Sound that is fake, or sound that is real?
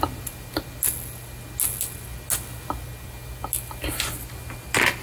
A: real